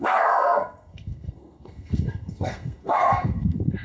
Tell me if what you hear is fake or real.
fake